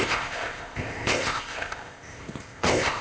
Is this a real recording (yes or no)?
no